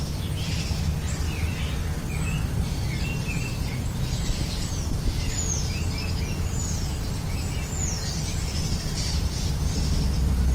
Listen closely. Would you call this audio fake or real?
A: real